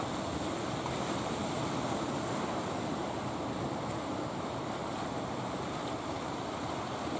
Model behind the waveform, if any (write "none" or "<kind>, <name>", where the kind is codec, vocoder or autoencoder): none